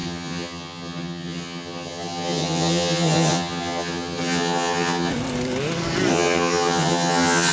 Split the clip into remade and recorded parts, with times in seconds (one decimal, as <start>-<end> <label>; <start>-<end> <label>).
0.0-5.1 remade; 5.1-6.1 recorded; 6.1-7.5 remade